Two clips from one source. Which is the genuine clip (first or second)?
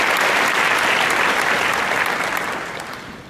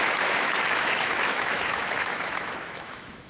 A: first